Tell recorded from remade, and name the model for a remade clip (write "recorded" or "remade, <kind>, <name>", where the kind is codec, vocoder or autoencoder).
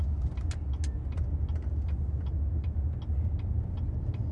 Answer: recorded